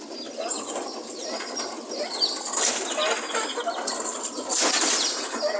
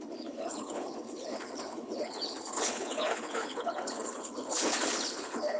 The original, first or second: first